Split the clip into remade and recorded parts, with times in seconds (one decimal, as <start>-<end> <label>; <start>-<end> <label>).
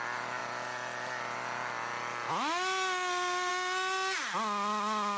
0.0-5.2 recorded